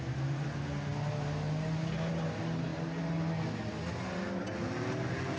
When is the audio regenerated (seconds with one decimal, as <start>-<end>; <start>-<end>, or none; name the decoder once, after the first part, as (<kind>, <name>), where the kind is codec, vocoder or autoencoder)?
none